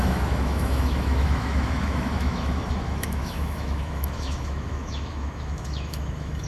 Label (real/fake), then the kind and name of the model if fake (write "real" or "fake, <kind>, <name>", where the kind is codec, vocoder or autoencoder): fake, autoencoder, DAC-VAE